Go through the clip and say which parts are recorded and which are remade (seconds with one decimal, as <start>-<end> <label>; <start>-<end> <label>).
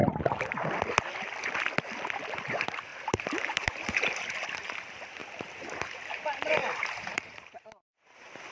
0.0-2.9 recorded; 2.9-4.7 remade; 4.7-6.6 recorded; 6.6-7.6 remade; 7.6-8.5 recorded